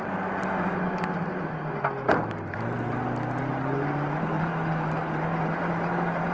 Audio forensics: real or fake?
real